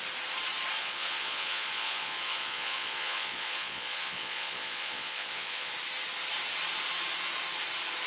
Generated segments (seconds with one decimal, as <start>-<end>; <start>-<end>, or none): 0.8-5.7